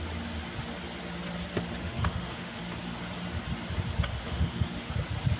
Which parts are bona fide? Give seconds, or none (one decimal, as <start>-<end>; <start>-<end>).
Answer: 0.0-1.8; 2.6-4.1; 4.9-5.4